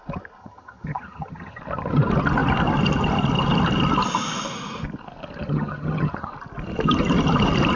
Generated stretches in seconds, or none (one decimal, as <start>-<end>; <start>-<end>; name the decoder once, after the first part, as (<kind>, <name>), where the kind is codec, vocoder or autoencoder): 0.4-1.6 (vocoder, HiFi-GAN); 5.4-6.3